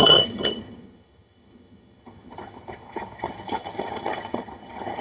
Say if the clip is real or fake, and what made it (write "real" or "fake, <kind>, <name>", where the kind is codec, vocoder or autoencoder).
fake, vocoder, HiFi-GAN